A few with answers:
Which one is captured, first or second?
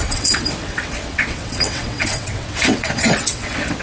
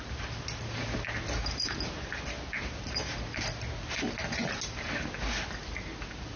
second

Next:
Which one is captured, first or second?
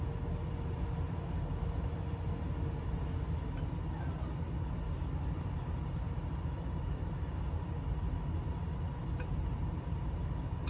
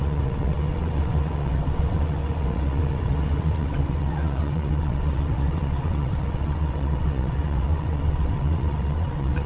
first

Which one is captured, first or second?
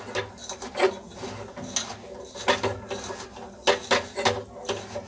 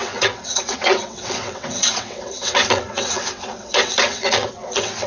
first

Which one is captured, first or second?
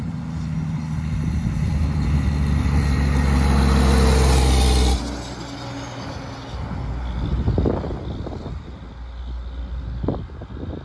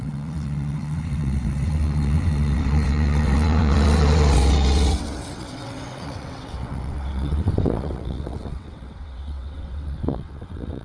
first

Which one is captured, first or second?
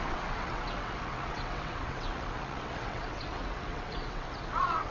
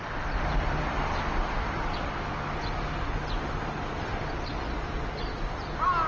second